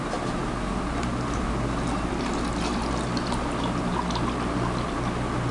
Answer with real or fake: real